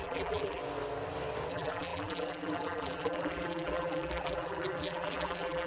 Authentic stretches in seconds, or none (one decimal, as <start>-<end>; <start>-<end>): 0.6-1.5